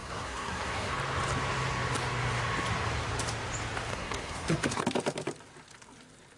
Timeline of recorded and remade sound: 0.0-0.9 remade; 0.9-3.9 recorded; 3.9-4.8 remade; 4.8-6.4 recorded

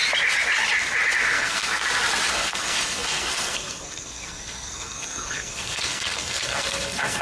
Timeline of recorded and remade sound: 0.0-1.2 recorded; 1.2-1.8 remade; 1.8-2.3 recorded; 2.3-7.2 remade

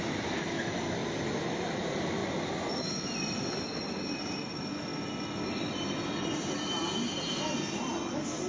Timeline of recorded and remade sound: 0.0-8.5 recorded